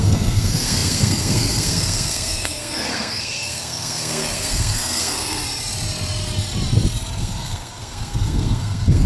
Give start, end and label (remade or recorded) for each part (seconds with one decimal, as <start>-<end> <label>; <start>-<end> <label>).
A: 0.0-5.4 remade; 5.4-7.2 recorded; 7.2-9.1 remade